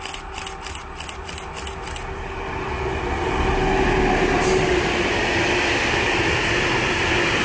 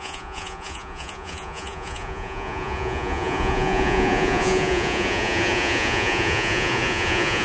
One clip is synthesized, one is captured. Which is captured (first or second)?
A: first